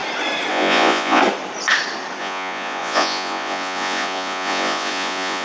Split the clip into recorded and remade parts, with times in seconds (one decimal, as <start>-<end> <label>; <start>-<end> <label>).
0.0-0.5 recorded; 0.5-1.2 remade; 1.2-2.2 recorded; 2.2-5.4 remade